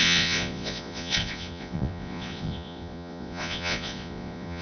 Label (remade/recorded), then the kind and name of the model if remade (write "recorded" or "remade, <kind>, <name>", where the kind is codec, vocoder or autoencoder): remade, vocoder, Vocos